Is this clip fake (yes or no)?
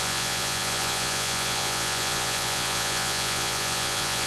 yes